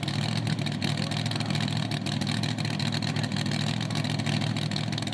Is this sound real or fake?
real